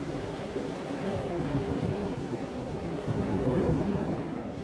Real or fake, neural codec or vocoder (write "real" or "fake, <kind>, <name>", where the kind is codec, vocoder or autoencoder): fake, codec, SNAC